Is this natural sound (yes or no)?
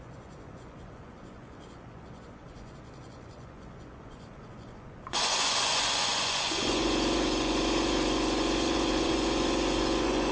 no